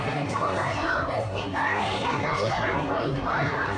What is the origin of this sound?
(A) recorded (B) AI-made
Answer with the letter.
B